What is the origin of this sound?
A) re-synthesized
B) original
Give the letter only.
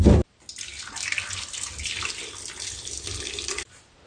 B